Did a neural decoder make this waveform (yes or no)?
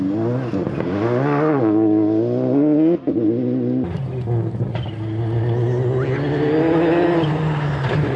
no